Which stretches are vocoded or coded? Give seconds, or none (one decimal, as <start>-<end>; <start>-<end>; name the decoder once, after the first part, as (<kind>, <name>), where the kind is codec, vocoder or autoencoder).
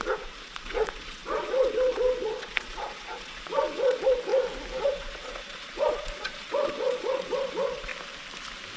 0.0-4.3 (vocoder, Vocos); 4.8-7.9